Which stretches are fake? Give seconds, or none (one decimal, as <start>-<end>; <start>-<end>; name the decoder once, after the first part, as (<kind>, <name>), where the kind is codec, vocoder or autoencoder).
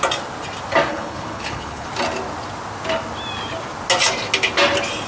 0.9-1.9 (codec, HILCodec)